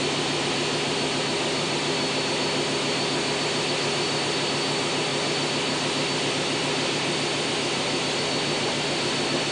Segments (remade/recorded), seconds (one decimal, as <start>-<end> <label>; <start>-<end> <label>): 0.0-9.5 recorded